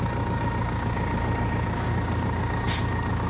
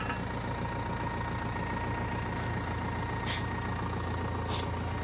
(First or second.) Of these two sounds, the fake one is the first